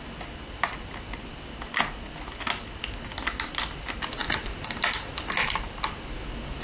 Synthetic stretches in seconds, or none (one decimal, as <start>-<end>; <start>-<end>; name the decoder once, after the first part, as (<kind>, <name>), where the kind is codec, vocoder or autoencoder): none

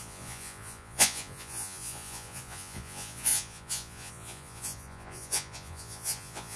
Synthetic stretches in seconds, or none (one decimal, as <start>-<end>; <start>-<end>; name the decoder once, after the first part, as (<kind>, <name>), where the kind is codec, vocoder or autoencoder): 0.0-6.6 (vocoder, Vocos)

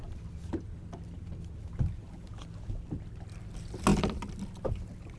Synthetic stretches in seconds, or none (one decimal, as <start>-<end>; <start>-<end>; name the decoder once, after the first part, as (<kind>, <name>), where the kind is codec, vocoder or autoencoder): none

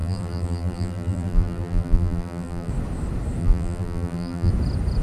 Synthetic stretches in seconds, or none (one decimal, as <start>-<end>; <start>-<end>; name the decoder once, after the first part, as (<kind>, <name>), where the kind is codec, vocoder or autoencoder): 0.0-2.7 (vocoder, BigVGAN v2); 3.4-4.5

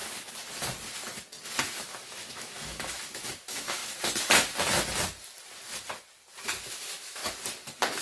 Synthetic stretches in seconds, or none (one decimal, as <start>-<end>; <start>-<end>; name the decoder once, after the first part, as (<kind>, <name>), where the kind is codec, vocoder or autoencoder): 1.6-3.8 (autoencoder, DAC-VAE); 6.7-7.2

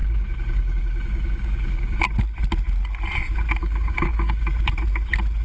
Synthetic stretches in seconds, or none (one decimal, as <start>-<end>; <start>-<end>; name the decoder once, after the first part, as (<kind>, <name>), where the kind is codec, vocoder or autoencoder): 0.0-2.0 (codec, DAC); 3.6-4.5

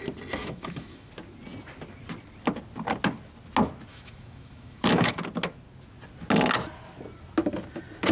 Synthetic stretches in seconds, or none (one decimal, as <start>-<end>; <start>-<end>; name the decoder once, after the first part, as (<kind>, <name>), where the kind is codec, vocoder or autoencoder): 0.4-1.1 (autoencoder, DAC-VAE); 3.9-5.1